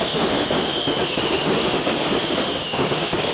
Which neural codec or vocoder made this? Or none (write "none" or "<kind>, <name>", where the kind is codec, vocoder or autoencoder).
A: autoencoder, DAC-VAE